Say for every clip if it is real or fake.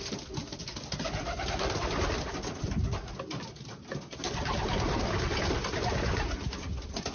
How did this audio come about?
real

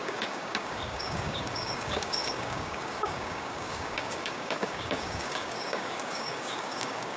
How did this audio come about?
fake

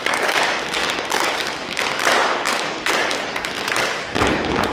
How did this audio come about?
fake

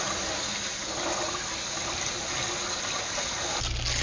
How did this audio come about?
real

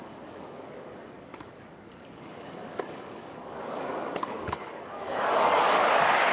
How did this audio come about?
fake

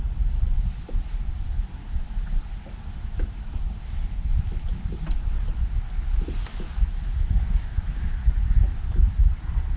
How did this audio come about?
real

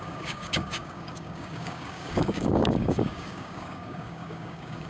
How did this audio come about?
fake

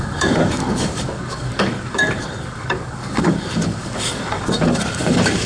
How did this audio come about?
fake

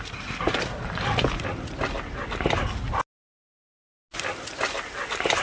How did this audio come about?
real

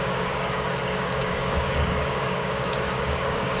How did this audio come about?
fake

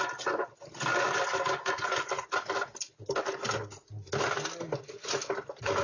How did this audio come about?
real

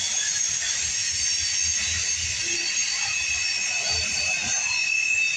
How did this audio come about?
real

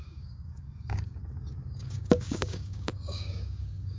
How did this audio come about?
fake